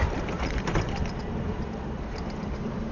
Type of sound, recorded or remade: remade